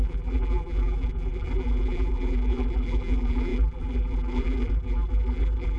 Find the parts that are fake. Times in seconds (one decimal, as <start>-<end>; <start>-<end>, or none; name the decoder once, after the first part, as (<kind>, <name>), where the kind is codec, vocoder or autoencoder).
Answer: 0.0-5.8 (vocoder, BigVGAN v2)